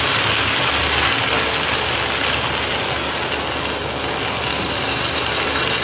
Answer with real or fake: real